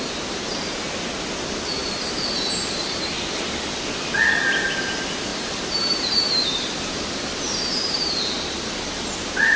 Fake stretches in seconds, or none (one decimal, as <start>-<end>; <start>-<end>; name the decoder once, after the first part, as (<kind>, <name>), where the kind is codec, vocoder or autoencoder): 1.8-2.8 (vocoder, BigVGAN v2); 5.3-8.1